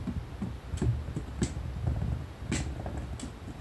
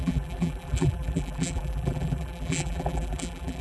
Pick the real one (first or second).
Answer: first